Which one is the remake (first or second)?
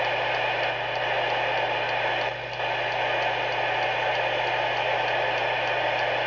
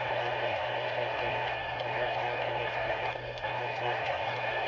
second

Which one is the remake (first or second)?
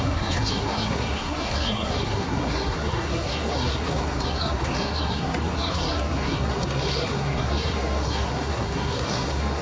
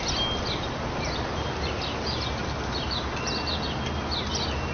first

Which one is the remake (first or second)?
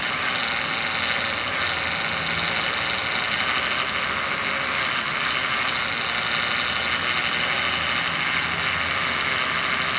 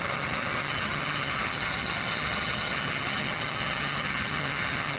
second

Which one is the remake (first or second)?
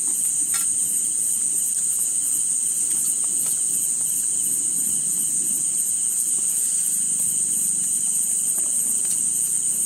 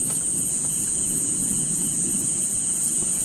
second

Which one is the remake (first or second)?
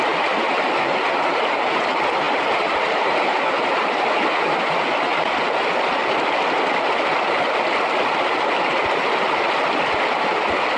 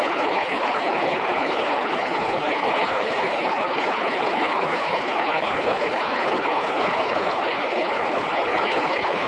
second